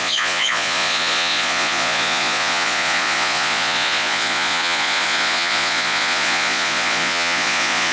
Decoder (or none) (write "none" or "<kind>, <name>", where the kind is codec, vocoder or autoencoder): vocoder, Vocos